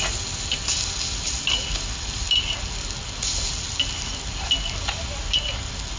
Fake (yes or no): no